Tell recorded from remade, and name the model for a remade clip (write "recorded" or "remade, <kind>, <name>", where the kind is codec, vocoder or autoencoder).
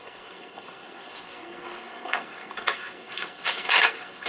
remade, codec, SNAC